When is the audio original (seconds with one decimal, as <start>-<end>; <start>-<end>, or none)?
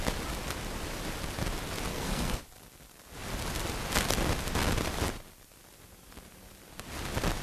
0.0-1.9; 2.4-7.4